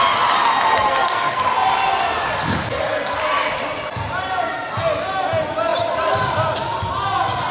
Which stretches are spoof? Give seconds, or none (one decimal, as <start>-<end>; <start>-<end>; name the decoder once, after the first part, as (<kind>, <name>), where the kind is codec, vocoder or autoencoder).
0.9-1.4 (codec, SNAC)